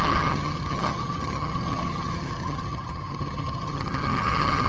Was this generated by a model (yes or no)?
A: yes